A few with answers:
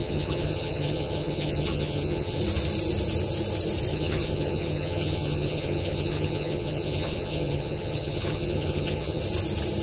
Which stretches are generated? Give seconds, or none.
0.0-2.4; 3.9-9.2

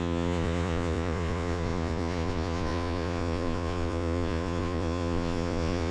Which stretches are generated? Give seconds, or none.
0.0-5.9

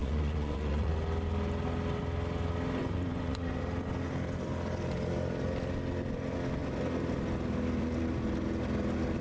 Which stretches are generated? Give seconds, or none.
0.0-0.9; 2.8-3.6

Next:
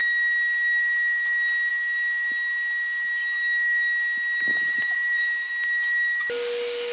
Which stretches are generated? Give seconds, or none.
4.5-5.5